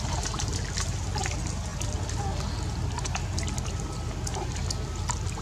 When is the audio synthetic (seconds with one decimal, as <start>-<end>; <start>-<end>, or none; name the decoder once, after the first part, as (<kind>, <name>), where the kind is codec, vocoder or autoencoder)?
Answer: none